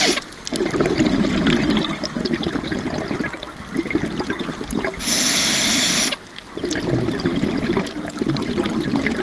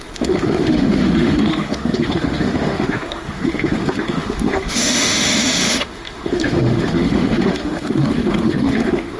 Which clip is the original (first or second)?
first